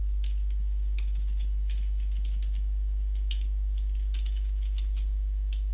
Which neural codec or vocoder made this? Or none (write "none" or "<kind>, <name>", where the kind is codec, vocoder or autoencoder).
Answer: autoencoder, DAC-VAE